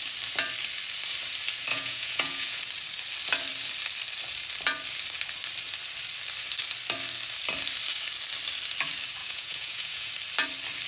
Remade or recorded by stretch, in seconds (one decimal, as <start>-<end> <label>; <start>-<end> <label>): 0.0-1.7 recorded; 1.7-2.6 remade; 2.6-9.2 recorded; 9.2-10.1 remade; 10.1-10.9 recorded

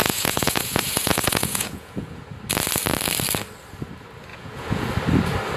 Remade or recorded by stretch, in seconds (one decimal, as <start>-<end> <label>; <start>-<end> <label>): 0.0-2.2 remade; 2.2-4.3 recorded; 4.3-4.9 remade; 4.9-5.6 recorded

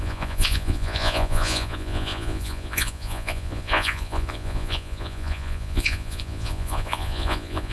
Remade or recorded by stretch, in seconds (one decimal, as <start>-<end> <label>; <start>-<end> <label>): 0.0-7.7 remade

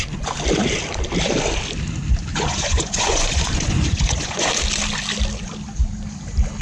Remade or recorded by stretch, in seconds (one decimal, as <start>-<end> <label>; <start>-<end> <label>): 0.0-2.3 recorded; 2.3-4.5 remade; 4.5-6.6 recorded

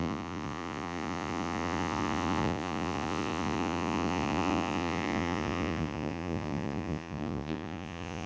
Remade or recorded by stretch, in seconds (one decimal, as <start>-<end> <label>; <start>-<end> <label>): 0.0-8.3 remade

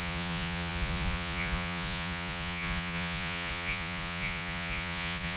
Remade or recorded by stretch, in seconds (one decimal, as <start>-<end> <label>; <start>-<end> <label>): 0.0-5.4 remade

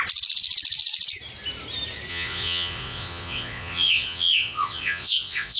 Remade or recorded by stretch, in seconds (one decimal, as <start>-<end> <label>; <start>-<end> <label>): 0.0-2.1 recorded; 2.1-5.6 remade

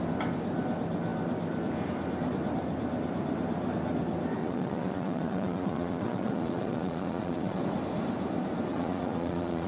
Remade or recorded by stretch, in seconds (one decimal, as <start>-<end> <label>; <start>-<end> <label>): 0.0-4.4 recorded; 4.4-7.6 remade; 7.6-8.7 recorded; 8.7-9.7 remade